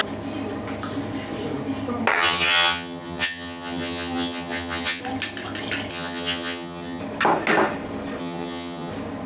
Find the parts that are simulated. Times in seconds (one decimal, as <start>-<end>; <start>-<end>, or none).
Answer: 2.1-5.0; 5.9-7.0; 8.2-8.9